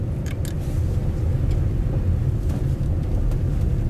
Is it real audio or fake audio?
real